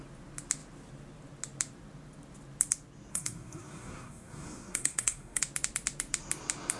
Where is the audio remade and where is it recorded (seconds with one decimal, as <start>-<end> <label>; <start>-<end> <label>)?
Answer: 0.0-3.1 recorded; 3.1-5.4 remade; 5.4-6.8 recorded